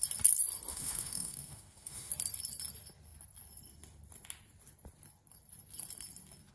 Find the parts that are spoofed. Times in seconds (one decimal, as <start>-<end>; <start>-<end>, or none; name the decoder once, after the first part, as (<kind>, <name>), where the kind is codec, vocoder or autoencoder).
0.7-2.1 (autoencoder, DAC-VAE)